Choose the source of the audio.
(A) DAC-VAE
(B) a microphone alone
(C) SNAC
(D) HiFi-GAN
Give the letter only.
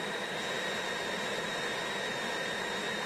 B